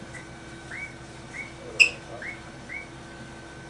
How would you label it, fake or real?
real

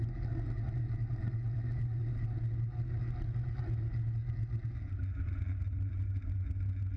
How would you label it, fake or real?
real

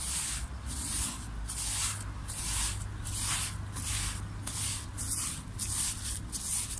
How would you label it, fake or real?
real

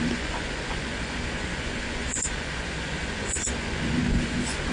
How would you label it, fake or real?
fake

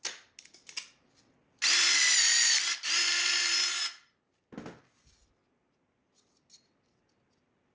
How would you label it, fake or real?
real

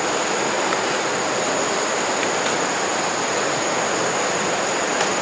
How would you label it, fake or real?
real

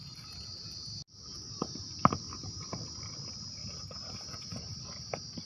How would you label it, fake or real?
real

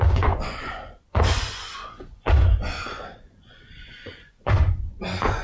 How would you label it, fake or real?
fake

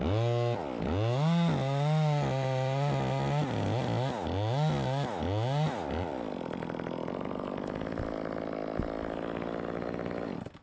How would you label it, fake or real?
real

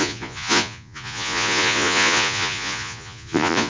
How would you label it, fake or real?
fake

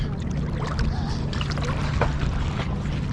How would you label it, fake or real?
real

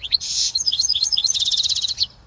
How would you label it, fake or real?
fake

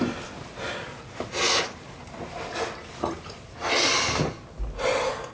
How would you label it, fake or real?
real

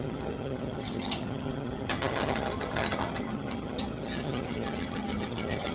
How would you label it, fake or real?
fake